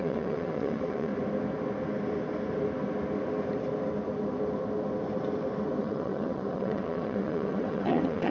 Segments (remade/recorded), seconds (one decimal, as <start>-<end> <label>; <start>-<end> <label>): 0.0-1.1 remade; 1.1-5.8 recorded; 5.8-8.3 remade

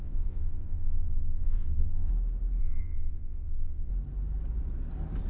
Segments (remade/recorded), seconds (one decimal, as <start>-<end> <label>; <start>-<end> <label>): 0.0-2.1 remade; 2.1-2.6 recorded; 2.6-3.9 remade; 3.9-5.3 recorded

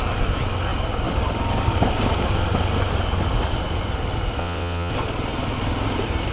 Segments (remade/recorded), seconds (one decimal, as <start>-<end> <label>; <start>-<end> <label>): 0.0-4.4 recorded; 4.4-4.9 remade; 4.9-6.3 recorded

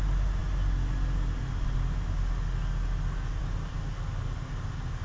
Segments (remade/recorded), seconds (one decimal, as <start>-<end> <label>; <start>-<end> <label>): 0.0-5.0 recorded

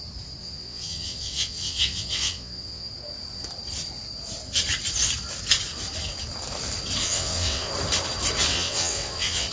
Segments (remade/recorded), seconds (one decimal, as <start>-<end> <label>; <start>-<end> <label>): 0.0-0.4 recorded; 0.4-2.9 remade; 2.9-7.0 recorded; 7.0-7.7 remade; 7.7-8.5 recorded; 8.5-9.5 remade